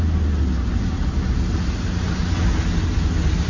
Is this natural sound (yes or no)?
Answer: yes